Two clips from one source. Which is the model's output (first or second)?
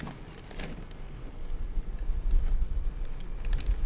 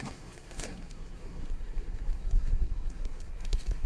second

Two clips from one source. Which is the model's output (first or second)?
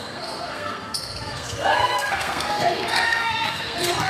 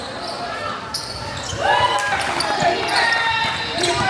first